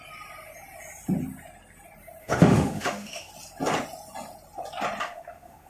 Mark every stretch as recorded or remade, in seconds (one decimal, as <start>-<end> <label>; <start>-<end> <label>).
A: 0.0-2.2 recorded; 2.2-3.3 remade; 3.3-5.0 recorded; 5.0-5.7 remade